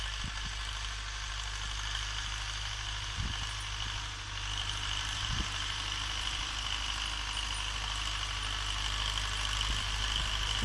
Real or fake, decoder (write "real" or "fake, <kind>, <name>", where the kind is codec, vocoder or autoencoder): real